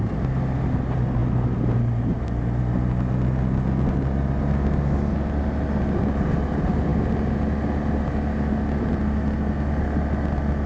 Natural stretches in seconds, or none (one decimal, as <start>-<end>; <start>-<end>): 0.0-10.7